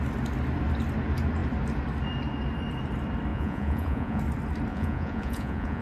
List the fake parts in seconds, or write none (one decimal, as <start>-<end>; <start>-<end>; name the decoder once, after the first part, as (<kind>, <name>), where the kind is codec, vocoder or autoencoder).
3.3-4.2 (vocoder, Vocos); 4.7-5.8